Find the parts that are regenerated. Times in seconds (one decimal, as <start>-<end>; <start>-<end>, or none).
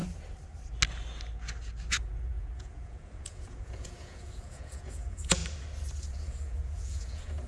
1.9-5.4; 6.0-7.5